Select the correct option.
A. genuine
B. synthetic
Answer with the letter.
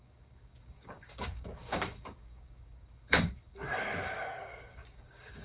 B